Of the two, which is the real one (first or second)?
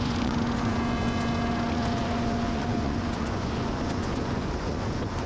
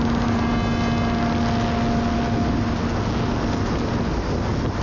second